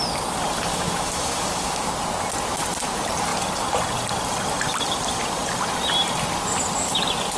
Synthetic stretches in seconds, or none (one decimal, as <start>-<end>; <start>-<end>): 0.7-1.9